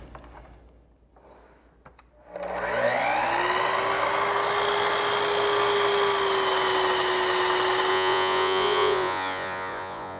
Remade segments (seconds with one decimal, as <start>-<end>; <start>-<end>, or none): 7.9-10.2